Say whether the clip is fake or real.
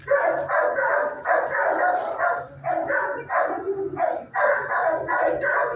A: real